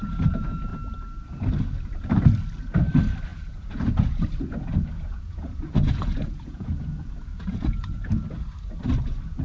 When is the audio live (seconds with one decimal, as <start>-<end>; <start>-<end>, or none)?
0.0-3.3; 8.3-9.4